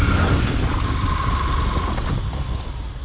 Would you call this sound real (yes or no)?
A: yes